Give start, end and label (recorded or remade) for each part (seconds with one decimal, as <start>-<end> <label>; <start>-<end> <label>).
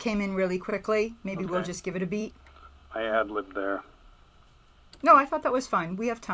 0.0-0.7 recorded; 0.7-2.3 remade; 2.3-6.3 recorded